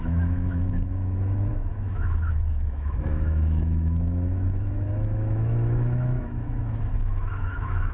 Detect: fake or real fake